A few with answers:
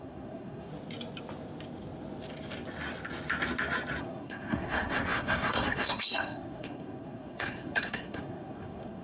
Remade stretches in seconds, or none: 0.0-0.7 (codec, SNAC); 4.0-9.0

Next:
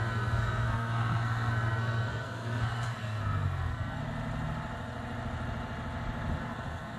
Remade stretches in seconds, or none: 0.0-4.0 (codec, SNAC); 6.4-7.0